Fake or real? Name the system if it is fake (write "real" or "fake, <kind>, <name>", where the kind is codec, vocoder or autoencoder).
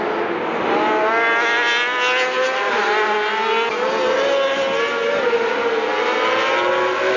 real